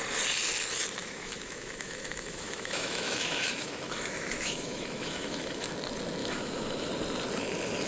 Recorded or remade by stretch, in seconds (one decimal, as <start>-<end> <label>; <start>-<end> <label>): 0.0-1.0 recorded; 1.0-5.7 remade; 5.7-6.2 recorded; 6.2-6.9 remade; 6.9-7.9 recorded